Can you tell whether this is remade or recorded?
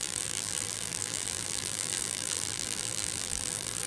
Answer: remade